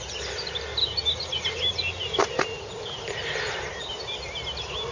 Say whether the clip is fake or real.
real